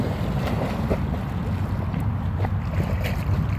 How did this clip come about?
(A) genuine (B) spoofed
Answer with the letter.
A